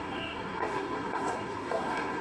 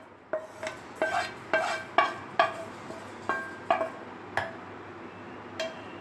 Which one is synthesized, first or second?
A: first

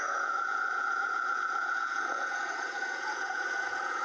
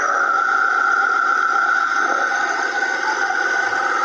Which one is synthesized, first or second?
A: first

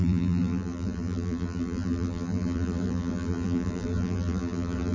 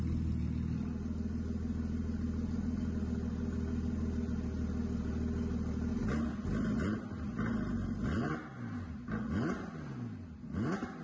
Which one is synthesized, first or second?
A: first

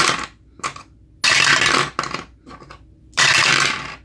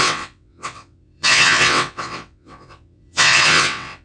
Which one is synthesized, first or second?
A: second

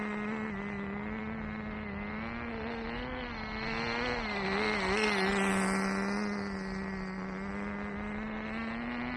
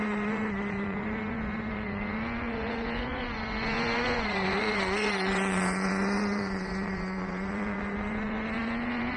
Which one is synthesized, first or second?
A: second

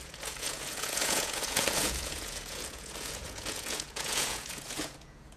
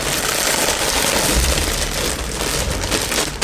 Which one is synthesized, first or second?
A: first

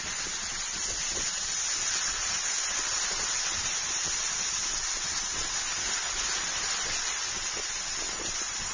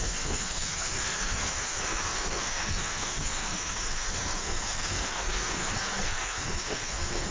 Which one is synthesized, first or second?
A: second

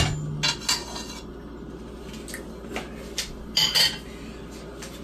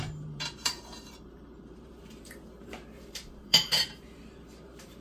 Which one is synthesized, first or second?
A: second